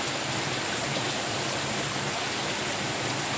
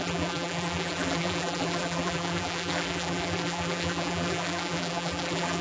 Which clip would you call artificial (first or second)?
second